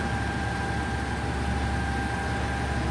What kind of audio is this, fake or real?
real